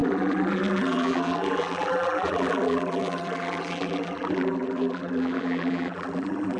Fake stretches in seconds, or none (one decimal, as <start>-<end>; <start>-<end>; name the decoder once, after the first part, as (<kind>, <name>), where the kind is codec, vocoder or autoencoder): 0.0-6.6 (vocoder, BigVGAN v2)